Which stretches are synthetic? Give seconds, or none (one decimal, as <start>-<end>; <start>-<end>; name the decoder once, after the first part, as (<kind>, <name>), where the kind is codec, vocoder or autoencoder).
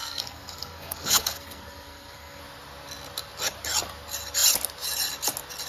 0.0-2.4 (codec, SNAC)